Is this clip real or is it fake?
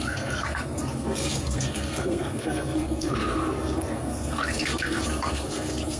fake